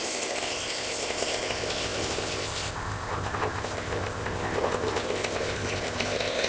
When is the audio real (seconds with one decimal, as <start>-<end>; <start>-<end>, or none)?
none